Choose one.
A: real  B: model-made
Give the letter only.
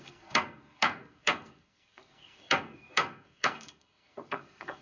B